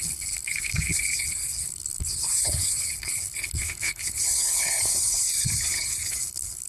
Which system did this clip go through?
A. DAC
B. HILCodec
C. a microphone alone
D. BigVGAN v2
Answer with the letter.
B